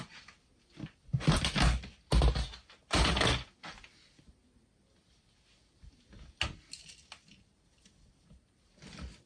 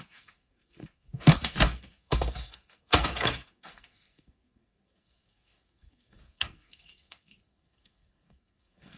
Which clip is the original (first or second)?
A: first